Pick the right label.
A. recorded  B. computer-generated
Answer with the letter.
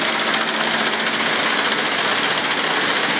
A